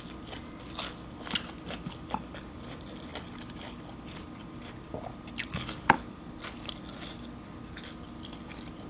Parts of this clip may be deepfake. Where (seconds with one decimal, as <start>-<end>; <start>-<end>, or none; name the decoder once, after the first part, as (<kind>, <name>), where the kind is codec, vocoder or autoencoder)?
none